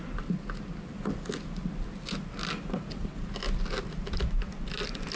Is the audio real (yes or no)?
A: yes